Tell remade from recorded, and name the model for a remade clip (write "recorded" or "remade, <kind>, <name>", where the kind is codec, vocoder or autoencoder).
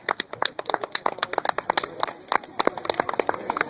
recorded